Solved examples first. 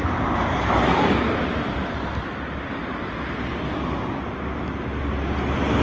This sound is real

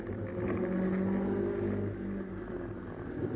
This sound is real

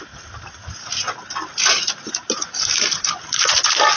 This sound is fake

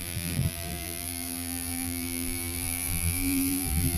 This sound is fake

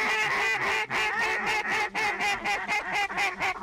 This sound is real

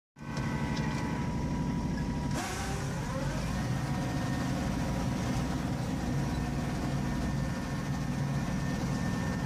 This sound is real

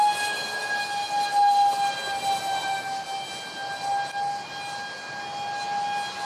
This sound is real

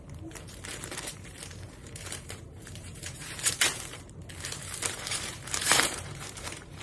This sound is fake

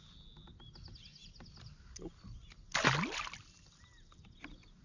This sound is real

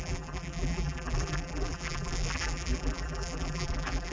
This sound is fake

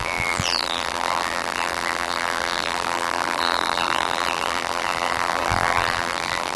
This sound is fake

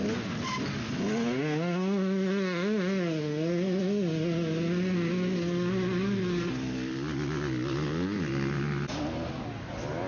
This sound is real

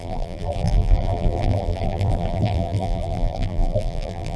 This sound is fake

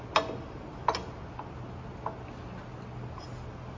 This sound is real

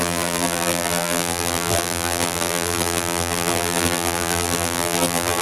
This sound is fake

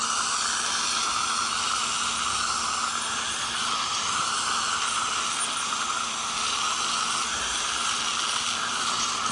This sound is real